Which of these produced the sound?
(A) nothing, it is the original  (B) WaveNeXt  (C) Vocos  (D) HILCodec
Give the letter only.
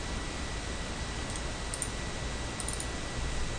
A